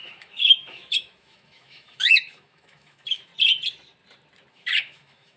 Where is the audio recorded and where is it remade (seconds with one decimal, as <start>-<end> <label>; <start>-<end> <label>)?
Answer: 0.0-3.3 remade; 3.3-4.5 recorded; 4.5-5.4 remade